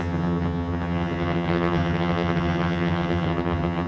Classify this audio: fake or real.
fake